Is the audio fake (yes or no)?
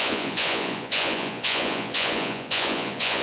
yes